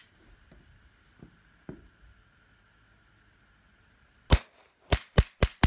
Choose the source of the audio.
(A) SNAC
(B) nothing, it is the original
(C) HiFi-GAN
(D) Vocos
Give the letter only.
B